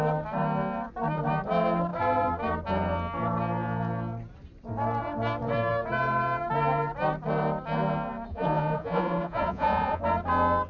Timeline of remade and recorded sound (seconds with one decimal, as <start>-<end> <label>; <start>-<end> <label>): 0.0-8.3 recorded; 8.3-10.0 remade; 10.0-10.7 recorded